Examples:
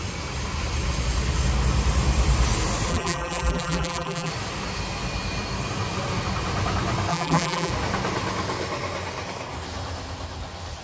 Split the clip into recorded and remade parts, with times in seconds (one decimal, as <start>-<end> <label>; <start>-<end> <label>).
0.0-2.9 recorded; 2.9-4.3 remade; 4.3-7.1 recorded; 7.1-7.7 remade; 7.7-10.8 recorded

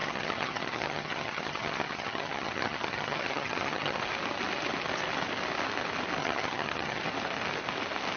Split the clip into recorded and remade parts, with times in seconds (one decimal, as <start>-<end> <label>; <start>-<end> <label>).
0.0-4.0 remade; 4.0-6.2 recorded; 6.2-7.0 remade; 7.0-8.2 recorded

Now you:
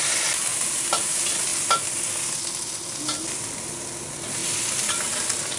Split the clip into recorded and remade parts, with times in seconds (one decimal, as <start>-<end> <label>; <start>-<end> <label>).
0.0-0.5 recorded; 0.5-1.1 remade; 1.1-5.6 recorded

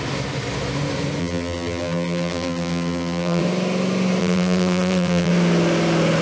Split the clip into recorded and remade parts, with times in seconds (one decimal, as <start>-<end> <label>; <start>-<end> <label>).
0.0-1.2 recorded; 1.2-3.4 remade; 3.4-4.2 recorded; 4.2-5.3 remade; 5.3-6.2 recorded

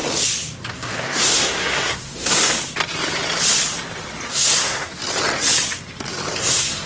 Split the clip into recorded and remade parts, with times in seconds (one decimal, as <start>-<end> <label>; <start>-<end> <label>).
0.0-0.7 recorded; 0.7-2.5 remade; 2.5-4.3 recorded; 4.3-5.0 remade; 5.0-6.4 recorded; 6.4-6.9 remade

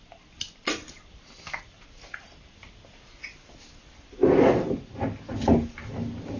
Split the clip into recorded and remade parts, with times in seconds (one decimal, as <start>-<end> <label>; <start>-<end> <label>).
0.0-6.4 recorded

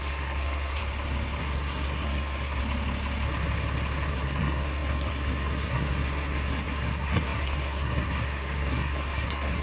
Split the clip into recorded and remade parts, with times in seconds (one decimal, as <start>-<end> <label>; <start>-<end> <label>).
0.0-0.8 remade; 0.8-1.4 recorded; 1.4-2.6 remade; 2.6-4.1 recorded; 4.1-9.6 remade